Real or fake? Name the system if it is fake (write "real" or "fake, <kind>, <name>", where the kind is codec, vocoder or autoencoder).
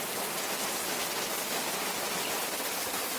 real